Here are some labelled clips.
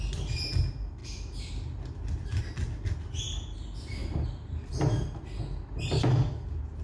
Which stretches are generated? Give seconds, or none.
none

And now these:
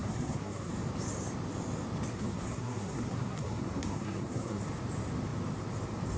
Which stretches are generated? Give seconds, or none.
0.0-0.7 (codec, SNAC); 2.1-4.6

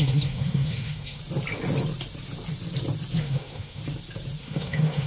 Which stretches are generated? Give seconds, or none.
0.0-1.2 (codec, SNAC); 3.2-3.8; 4.4-5.1

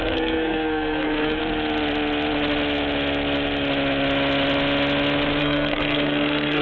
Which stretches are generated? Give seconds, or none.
0.0-1.4 (codec, SNAC); 5.4-6.6

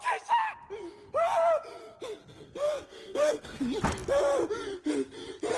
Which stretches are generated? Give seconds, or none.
2.2-3.6 (codec, SNAC)